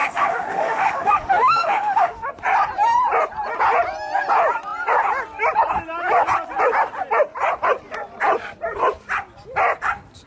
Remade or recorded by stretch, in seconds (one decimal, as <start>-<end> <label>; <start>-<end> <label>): 0.0-2.3 remade; 2.3-10.3 recorded

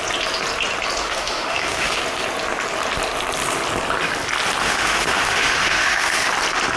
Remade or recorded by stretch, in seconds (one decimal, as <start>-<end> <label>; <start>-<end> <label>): 0.0-1.0 recorded; 1.0-2.0 remade; 2.0-4.6 recorded; 4.6-6.3 remade; 6.3-6.8 recorded

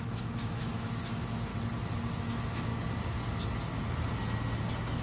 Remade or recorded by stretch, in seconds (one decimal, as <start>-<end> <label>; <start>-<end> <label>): 0.0-1.5 remade; 1.5-2.2 recorded; 2.2-2.7 remade; 2.7-5.0 recorded

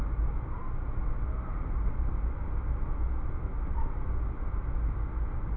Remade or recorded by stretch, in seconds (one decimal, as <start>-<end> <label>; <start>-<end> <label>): 0.0-5.6 recorded

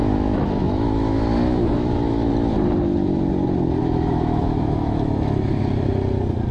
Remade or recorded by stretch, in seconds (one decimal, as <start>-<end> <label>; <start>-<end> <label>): 0.0-2.3 remade; 2.3-3.8 recorded; 3.8-5.6 remade; 5.6-6.5 recorded